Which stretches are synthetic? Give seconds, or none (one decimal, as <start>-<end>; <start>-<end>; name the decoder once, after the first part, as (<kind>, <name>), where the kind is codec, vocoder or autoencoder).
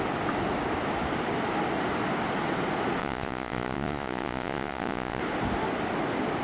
3.0-5.2 (vocoder, Vocos)